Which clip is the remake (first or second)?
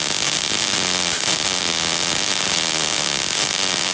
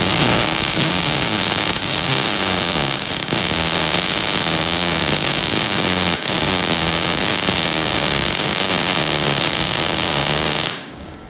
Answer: second